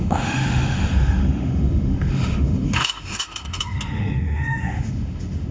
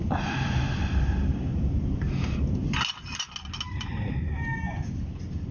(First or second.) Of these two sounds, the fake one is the first